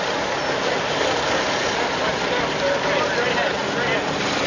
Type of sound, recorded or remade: recorded